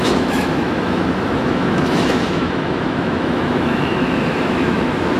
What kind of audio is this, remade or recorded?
remade